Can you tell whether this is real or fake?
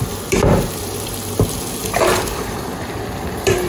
fake